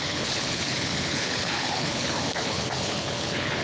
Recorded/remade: remade